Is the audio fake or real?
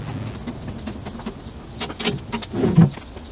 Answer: real